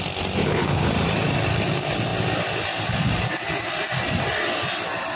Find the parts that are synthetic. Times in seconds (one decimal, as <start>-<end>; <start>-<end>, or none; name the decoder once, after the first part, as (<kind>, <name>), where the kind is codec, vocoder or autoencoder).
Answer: 0.4-0.9 (codec, HILCodec)